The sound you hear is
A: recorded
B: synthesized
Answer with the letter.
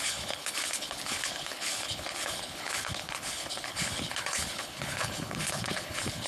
B